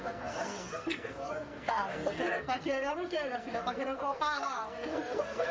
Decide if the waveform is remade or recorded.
remade